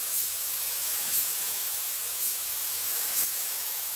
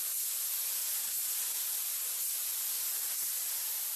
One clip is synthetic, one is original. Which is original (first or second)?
second